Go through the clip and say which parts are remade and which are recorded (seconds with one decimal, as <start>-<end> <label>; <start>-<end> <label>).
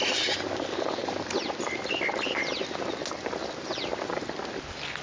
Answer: 0.0-5.0 recorded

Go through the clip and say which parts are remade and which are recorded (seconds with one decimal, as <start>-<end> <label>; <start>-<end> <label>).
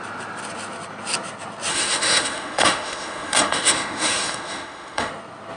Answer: 0.0-1.7 recorded; 1.7-5.1 remade; 5.1-5.6 recorded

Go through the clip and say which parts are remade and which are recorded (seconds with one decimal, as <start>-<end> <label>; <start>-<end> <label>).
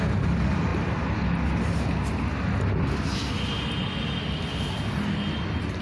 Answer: 0.0-5.8 recorded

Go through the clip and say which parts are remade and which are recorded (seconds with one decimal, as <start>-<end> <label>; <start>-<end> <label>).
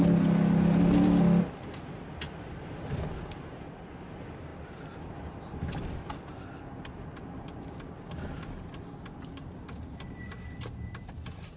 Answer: 0.0-11.6 recorded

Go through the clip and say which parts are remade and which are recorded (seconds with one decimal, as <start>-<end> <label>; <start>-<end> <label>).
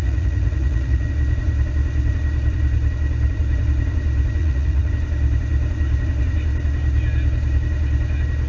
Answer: 0.0-1.1 remade; 1.1-4.4 recorded; 4.4-4.9 remade; 4.9-8.5 recorded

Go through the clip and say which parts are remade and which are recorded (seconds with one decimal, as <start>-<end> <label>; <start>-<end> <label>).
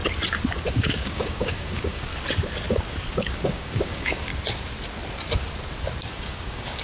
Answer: 0.0-0.7 recorded; 0.7-2.1 remade; 2.1-3.1 recorded; 3.1-4.3 remade; 4.3-6.0 recorded; 6.0-6.8 remade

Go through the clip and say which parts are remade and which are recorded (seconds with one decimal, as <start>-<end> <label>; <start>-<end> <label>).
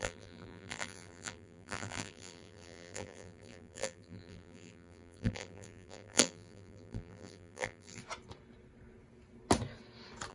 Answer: 0.0-8.0 remade; 8.0-10.3 recorded